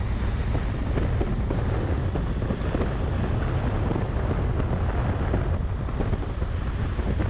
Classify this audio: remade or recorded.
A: recorded